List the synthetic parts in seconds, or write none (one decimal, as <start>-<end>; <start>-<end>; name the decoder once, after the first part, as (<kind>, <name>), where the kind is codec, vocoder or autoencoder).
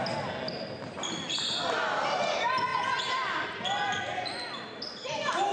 none